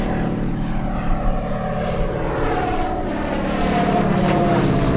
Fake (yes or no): yes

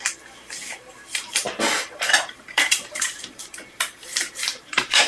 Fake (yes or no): yes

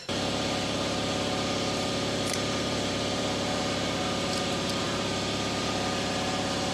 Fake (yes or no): yes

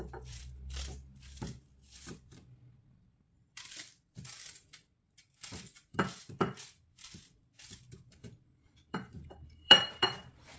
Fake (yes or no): yes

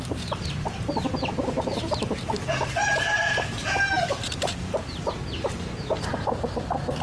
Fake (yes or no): yes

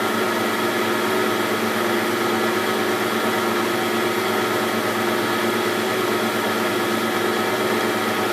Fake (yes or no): no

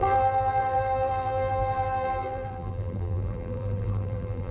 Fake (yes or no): yes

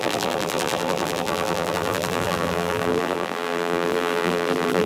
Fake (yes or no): yes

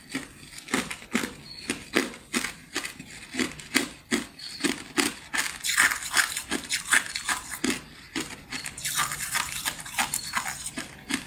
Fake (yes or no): no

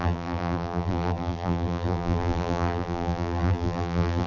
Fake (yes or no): yes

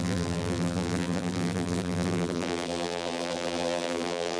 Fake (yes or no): yes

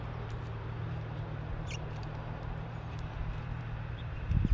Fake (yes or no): yes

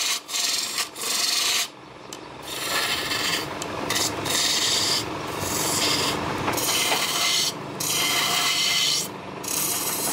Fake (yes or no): yes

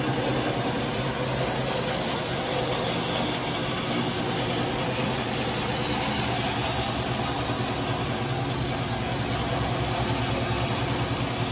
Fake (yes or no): no